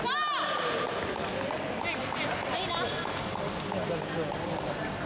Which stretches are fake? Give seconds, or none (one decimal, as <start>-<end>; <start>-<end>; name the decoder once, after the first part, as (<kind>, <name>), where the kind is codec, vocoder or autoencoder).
2.0-2.5 (vocoder, BigVGAN v2)